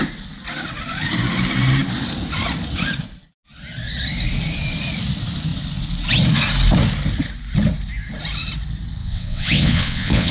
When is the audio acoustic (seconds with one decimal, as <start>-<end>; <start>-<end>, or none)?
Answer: 0.0-9.0